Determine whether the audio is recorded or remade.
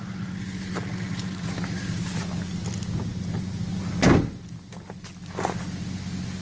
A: recorded